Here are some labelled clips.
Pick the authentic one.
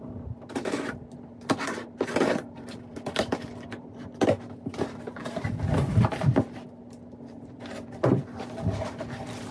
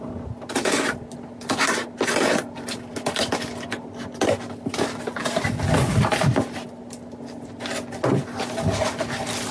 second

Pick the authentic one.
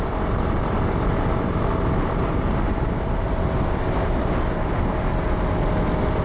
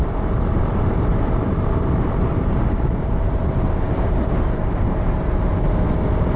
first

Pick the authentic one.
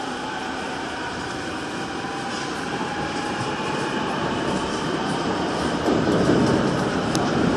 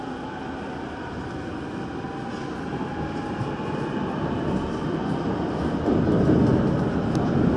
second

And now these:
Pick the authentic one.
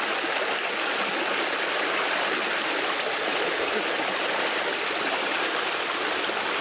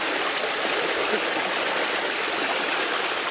first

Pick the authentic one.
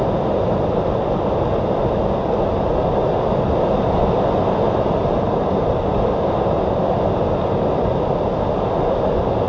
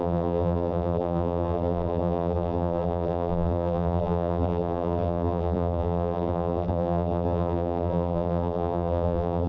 first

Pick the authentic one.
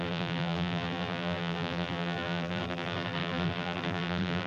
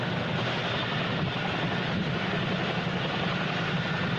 second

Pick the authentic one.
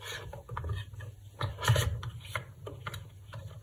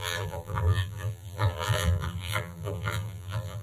first